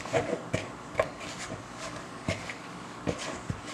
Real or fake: fake